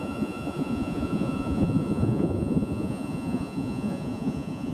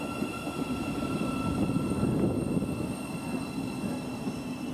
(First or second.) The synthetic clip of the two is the first